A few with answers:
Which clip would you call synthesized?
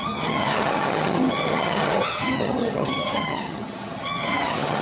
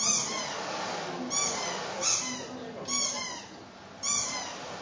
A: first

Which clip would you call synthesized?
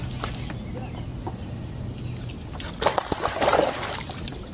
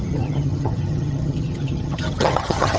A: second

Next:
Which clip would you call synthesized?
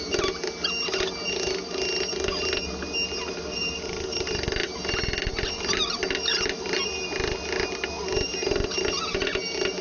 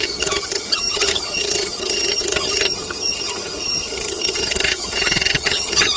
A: second